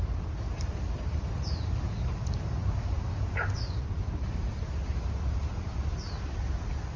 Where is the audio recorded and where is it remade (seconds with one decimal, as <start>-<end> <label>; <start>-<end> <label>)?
0.0-7.0 recorded